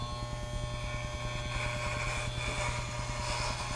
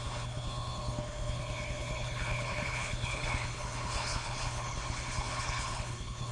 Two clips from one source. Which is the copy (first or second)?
second